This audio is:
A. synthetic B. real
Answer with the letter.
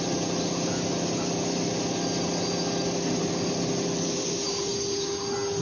B